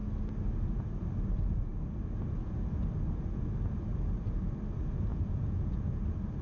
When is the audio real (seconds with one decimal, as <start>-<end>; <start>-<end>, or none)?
0.0-5.1; 5.9-6.4